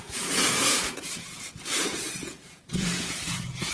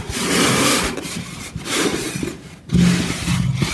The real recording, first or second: second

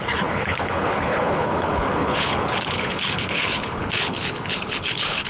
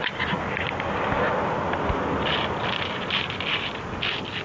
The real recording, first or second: second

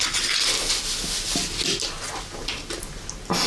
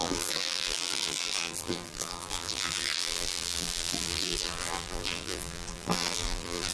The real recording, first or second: first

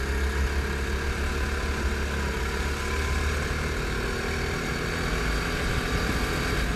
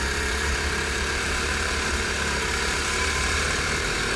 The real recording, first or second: first